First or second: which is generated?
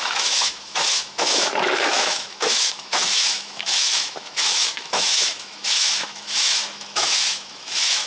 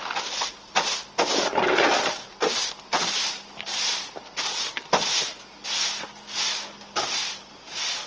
first